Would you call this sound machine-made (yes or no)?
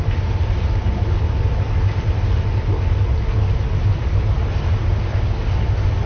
no